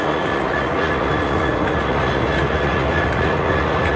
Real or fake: fake